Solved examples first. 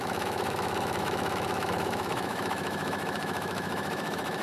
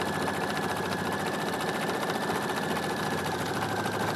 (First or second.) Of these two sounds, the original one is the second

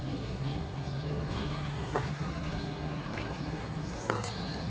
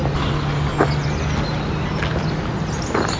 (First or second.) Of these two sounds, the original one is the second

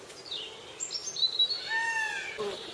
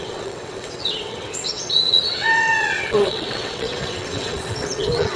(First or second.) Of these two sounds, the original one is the first